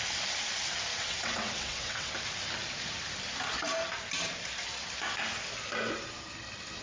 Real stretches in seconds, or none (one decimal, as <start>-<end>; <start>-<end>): 0.0-0.9; 2.1-6.8